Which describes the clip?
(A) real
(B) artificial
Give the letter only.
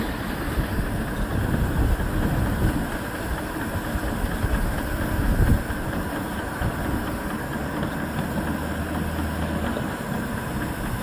A